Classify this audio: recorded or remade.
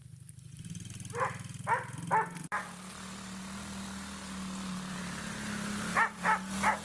recorded